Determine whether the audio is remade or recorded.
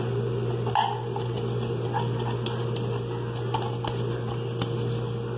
recorded